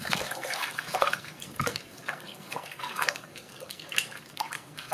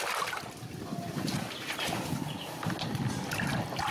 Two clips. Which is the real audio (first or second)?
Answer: second